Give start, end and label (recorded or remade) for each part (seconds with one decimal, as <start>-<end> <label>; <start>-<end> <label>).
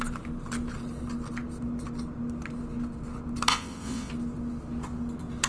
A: 0.0-3.5 recorded; 3.5-4.1 remade; 4.1-5.5 recorded